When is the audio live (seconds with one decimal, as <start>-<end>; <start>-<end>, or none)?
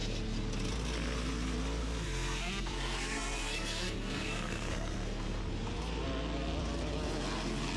0.0-1.8; 5.4-7.8